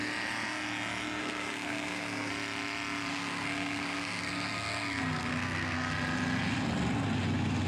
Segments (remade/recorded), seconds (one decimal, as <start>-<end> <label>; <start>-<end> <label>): 0.0-1.2 recorded; 1.2-2.3 remade; 2.3-3.1 recorded; 3.1-5.9 remade; 5.9-7.7 recorded